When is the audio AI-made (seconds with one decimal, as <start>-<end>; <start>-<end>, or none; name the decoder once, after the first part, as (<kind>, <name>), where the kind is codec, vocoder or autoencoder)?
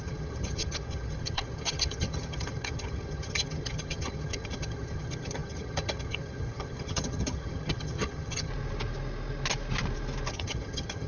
0.0-8.5 (vocoder, HiFi-GAN); 10.3-11.1